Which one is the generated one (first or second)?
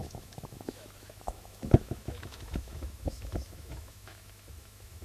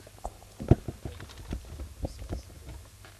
first